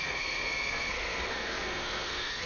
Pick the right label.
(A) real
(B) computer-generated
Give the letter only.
B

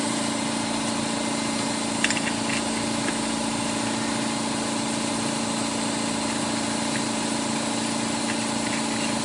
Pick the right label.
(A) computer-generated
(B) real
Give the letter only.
B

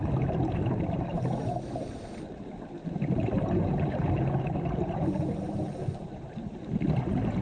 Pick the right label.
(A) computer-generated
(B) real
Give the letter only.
B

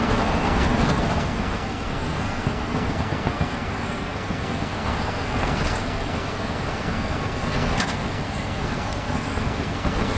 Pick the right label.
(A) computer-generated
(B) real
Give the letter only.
A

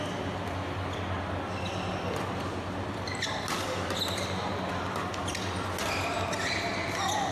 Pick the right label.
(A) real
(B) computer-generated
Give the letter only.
A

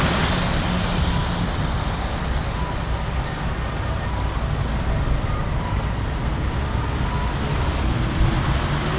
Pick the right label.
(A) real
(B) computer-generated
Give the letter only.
A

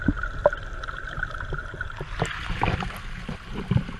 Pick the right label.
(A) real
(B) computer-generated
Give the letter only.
A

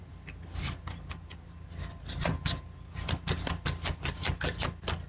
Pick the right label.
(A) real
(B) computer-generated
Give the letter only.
A